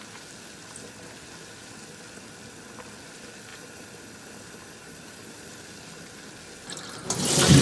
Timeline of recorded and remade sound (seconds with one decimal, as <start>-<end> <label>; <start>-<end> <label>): 0.0-3.5 recorded; 3.5-6.2 remade; 6.2-7.6 recorded